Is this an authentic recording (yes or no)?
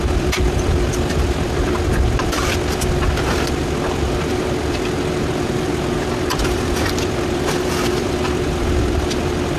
no